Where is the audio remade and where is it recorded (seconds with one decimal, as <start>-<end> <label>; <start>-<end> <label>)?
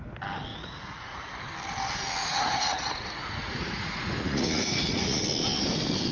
0.0-0.5 recorded; 0.5-1.3 remade; 1.3-2.2 recorded; 2.2-5.2 remade; 5.2-6.1 recorded